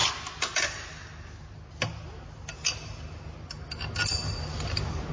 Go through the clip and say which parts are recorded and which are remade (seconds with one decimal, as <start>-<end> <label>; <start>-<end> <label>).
0.0-5.1 recorded

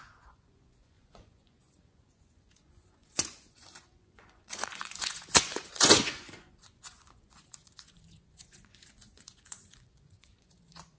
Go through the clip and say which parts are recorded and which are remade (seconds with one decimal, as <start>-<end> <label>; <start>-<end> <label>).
0.0-11.0 remade

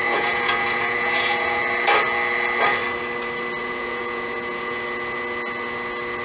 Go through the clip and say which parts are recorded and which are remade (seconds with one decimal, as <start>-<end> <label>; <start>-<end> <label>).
0.0-1.6 remade; 1.6-3.6 recorded; 3.6-4.8 remade; 4.8-6.2 recorded

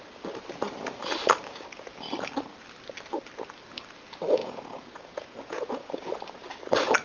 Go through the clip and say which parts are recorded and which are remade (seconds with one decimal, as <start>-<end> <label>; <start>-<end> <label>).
0.0-4.4 recorded; 4.4-6.1 remade; 6.1-7.0 recorded

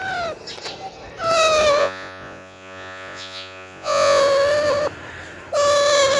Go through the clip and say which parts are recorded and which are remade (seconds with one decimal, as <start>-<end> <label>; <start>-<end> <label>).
0.0-1.8 recorded; 1.8-4.2 remade; 4.2-6.2 recorded

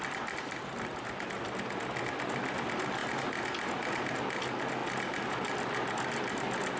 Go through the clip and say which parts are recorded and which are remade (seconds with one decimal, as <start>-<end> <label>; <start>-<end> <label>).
0.0-6.8 recorded

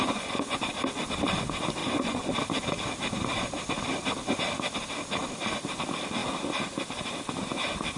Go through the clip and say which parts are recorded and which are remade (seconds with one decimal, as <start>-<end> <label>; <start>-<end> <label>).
0.0-0.6 remade; 0.6-1.8 recorded; 1.8-2.4 remade; 2.4-8.0 recorded

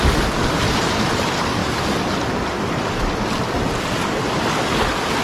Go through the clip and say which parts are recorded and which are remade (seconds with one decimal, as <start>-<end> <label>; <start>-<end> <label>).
0.0-5.2 recorded